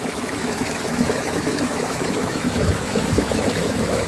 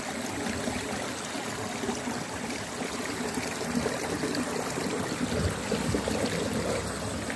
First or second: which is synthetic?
first